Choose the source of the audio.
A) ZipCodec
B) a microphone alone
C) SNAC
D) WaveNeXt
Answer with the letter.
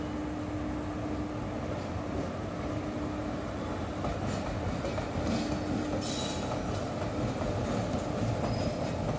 B